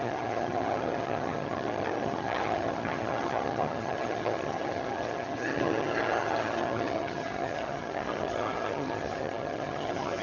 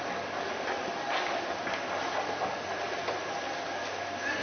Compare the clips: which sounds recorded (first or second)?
second